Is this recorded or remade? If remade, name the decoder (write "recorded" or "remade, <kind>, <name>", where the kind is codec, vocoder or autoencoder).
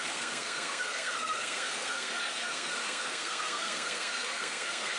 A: remade, codec, SNAC